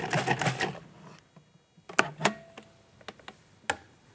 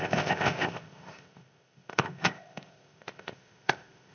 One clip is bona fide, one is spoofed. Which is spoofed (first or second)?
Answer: second